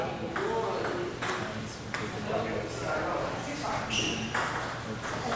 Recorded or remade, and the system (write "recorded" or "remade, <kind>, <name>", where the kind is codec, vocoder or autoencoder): recorded